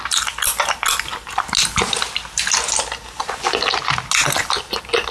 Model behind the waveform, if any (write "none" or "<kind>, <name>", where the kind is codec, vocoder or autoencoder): none